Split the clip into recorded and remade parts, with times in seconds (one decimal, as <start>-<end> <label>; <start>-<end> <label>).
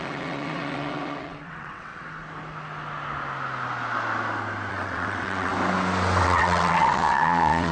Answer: 0.0-1.9 remade; 1.9-4.7 recorded; 4.7-5.5 remade; 5.5-6.2 recorded; 6.2-7.7 remade